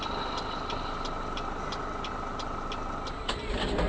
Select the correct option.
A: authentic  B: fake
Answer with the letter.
A